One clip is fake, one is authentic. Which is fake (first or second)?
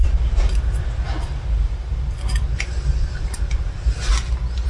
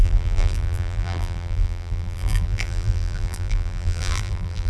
second